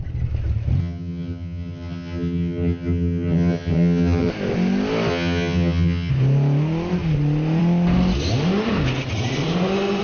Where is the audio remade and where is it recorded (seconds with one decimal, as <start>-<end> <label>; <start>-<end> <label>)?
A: 0.0-0.8 recorded; 0.8-4.3 remade; 4.3-5.1 recorded; 5.1-6.1 remade; 6.1-10.0 recorded